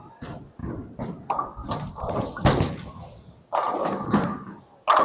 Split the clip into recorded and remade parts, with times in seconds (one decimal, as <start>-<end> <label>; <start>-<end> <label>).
0.0-5.0 recorded